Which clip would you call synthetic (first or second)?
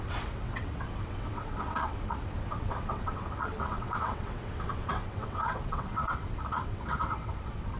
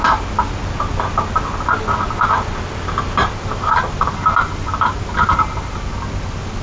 first